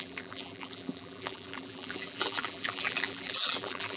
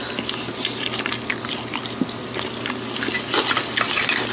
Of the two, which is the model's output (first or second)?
first